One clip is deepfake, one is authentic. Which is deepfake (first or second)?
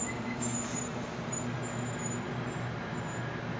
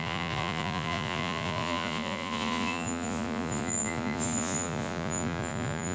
second